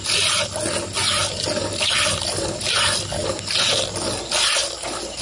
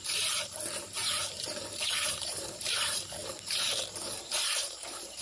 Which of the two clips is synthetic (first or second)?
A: second